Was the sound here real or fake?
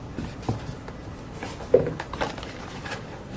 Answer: real